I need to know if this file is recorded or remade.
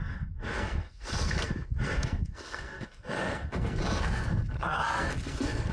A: remade